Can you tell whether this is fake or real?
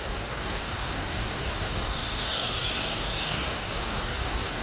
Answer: fake